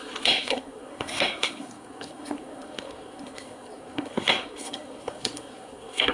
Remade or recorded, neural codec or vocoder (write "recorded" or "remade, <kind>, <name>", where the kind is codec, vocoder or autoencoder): remade, codec, SNAC